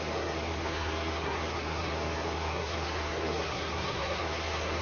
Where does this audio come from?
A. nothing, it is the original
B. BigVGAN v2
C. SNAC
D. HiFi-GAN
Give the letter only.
C